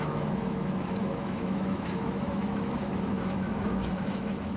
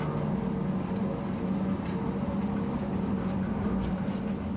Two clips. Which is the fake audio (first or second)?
first